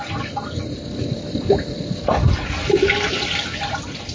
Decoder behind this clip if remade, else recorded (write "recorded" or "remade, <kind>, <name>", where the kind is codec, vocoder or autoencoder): recorded